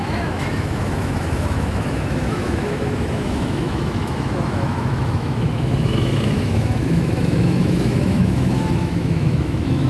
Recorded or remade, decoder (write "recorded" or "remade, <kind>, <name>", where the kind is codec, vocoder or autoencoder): remade, autoencoder, DAC-VAE